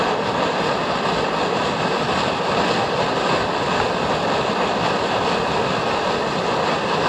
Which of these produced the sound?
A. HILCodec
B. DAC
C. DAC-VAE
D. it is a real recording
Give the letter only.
D